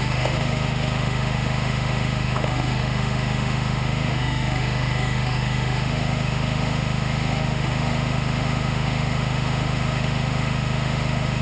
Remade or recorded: remade